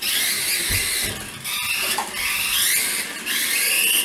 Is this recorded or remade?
recorded